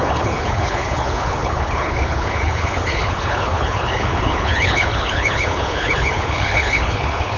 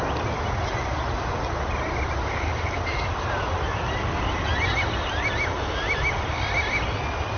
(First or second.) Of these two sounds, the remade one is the first